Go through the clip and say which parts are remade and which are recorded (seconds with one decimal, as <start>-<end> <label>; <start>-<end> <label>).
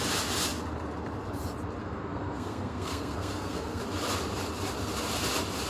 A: 0.0-1.8 recorded; 1.8-3.8 remade; 3.8-5.7 recorded